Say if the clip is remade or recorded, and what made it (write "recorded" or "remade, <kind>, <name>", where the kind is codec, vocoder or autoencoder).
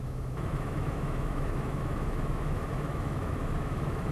remade, autoencoder, DAC-VAE